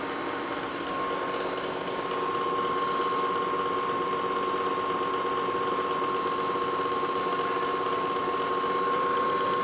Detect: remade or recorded recorded